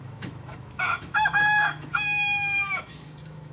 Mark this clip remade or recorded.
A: remade